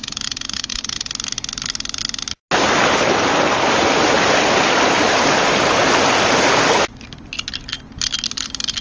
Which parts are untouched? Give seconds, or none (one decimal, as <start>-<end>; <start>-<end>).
0.0-8.8

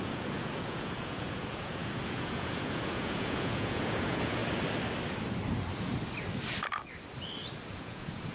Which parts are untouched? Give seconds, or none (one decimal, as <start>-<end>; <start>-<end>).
4.4-7.7

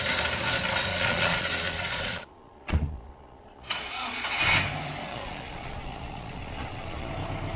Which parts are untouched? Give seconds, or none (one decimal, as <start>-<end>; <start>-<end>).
0.0-0.9; 4.4-5.1; 7.1-7.6

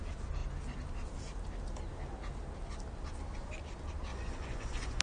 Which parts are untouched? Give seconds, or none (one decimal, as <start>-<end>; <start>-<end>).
0.0-4.1

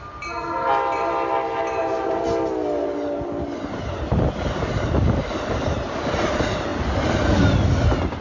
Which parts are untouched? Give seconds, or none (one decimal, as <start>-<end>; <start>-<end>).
0.0-8.2

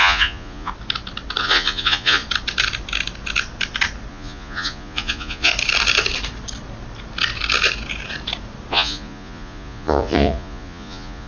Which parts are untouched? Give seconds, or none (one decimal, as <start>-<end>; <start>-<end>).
0.7-1.4; 2.2-4.1; 5.5-8.7

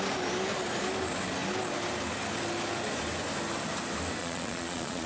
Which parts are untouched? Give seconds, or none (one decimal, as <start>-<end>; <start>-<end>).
0.0-4.2

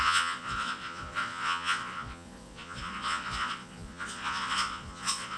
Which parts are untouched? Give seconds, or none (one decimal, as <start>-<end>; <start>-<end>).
none